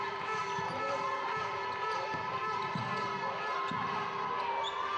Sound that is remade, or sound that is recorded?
recorded